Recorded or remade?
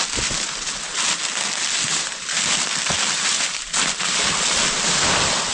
recorded